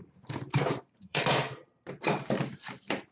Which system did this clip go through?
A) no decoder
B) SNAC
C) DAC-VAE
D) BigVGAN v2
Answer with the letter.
D